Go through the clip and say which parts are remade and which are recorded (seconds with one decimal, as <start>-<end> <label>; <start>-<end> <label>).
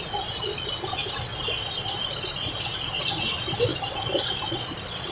0.0-5.1 recorded